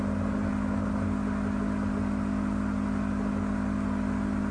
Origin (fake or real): real